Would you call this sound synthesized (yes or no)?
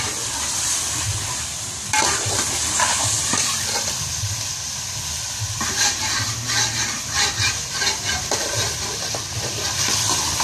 yes